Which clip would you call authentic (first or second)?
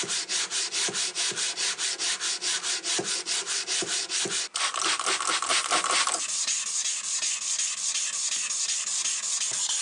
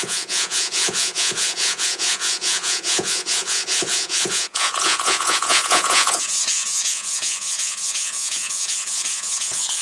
first